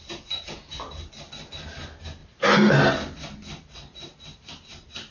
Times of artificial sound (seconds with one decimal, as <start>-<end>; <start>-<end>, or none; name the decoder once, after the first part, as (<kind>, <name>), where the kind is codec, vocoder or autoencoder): 2.2-2.9 (vocoder, BigVGAN v2)

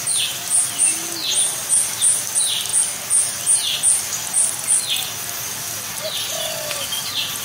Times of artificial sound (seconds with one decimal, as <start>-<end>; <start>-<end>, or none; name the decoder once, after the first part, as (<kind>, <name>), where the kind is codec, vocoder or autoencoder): none

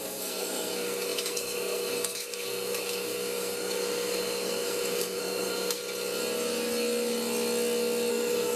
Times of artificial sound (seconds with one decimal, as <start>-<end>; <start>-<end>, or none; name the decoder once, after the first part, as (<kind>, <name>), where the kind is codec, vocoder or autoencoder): 0.0-5.8 (codec, SNAC); 8.1-8.6